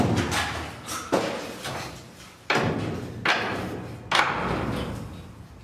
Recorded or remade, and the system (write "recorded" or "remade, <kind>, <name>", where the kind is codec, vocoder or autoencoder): recorded